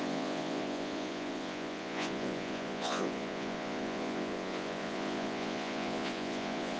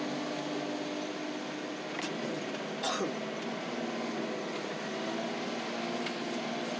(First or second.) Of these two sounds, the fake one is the first